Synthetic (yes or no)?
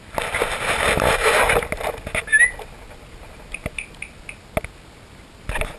no